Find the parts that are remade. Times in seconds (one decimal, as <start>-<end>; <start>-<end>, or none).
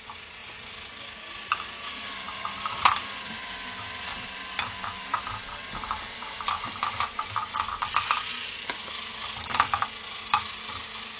none